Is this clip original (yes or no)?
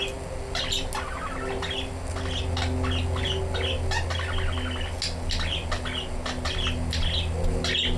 yes